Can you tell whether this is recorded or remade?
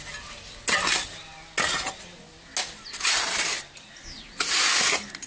recorded